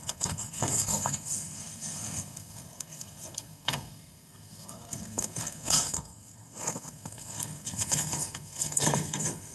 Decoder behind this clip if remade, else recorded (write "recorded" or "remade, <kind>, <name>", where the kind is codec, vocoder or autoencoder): remade, codec, SNAC